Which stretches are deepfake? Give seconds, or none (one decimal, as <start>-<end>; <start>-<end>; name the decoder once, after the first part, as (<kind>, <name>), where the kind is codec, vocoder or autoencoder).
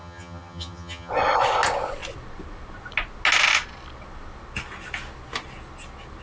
0.0-1.1 (vocoder, HiFi-GAN)